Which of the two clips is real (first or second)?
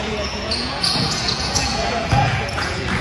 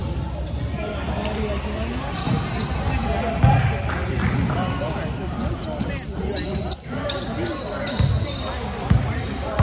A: second